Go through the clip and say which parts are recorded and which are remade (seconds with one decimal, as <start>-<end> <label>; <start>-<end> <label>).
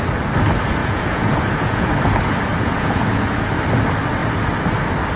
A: 0.0-0.8 recorded; 0.8-1.9 remade; 1.9-2.5 recorded; 2.5-3.5 remade; 3.5-5.2 recorded